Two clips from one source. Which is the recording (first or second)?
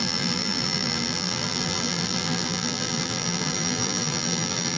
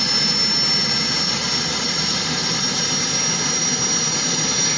second